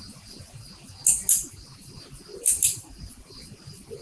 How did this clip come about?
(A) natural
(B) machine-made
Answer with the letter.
A